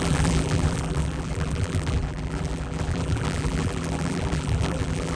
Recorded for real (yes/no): no